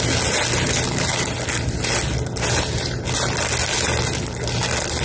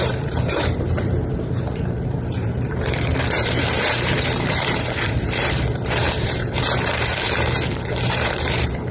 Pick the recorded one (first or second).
first